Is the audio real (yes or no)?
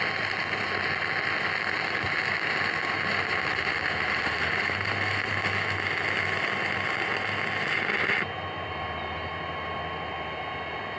yes